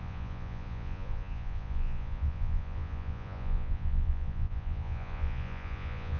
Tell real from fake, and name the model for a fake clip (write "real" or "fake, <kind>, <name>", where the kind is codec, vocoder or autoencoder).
fake, vocoder, Vocos